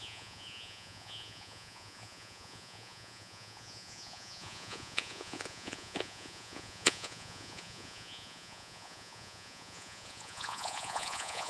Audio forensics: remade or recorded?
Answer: remade